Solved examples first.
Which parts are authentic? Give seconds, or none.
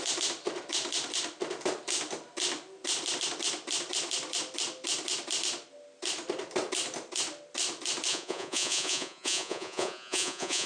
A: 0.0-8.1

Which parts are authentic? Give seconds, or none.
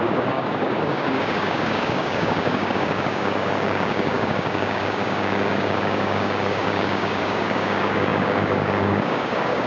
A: none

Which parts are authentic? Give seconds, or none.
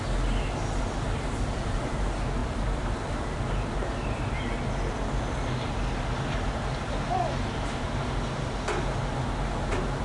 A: 0.0-2.4; 3.7-10.0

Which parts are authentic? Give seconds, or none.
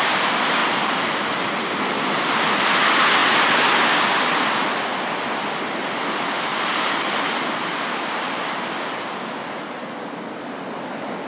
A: 0.0-11.3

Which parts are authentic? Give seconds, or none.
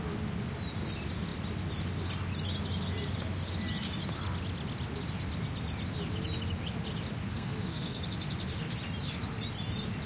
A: 0.0-7.3; 8.0-10.1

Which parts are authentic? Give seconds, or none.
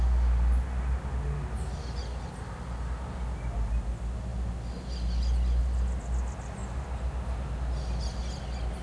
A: 0.0-8.8